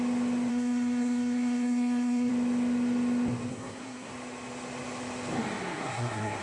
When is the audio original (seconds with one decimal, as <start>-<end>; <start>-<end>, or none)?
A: 0.0-0.5; 2.3-3.5; 4.1-5.6